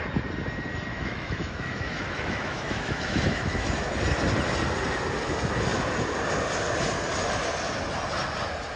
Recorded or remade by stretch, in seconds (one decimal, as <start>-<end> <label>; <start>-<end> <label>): 0.0-0.9 recorded; 0.9-3.9 remade; 3.9-8.8 recorded